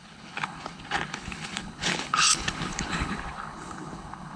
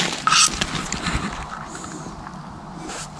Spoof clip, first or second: first